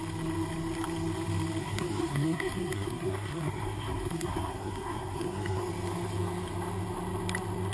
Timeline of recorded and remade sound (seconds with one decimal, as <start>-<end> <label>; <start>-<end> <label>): 0.0-1.6 recorded; 1.6-5.6 remade; 5.6-7.7 recorded